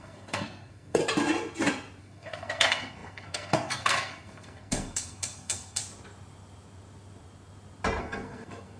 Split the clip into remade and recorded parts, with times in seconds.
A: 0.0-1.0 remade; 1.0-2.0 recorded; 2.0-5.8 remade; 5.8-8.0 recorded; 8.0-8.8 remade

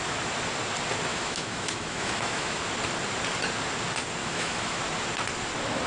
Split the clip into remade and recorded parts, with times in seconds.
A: 0.0-1.1 recorded; 1.1-2.6 remade; 2.6-4.2 recorded; 4.2-4.8 remade; 4.8-5.9 recorded

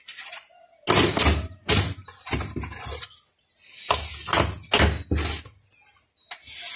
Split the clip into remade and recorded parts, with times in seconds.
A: 0.0-6.8 recorded

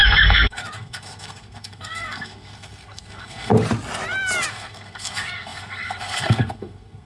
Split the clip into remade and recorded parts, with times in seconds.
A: 0.0-3.5 remade; 3.5-4.5 recorded; 4.5-7.1 remade